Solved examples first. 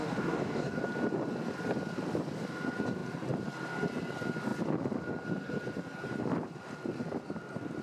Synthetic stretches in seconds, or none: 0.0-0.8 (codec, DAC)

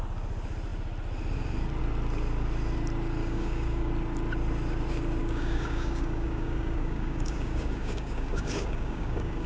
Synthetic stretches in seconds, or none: 3.2-3.9 (codec, DAC); 5.2-9.5